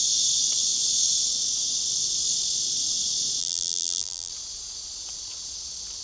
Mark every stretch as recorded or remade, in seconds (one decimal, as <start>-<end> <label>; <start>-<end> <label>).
0.0-3.4 recorded; 3.4-4.3 remade; 4.3-6.0 recorded